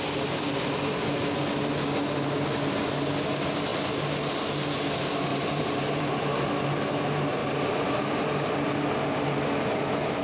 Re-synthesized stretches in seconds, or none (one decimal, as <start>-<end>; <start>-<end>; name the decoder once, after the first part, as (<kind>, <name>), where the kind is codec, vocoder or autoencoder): 5.3-6.1 (vocoder, BigVGAN v2)